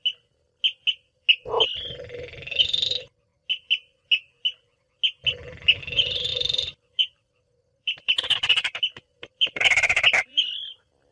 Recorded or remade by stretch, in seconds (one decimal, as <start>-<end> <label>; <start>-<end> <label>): 0.0-6.3 recorded; 6.3-11.1 remade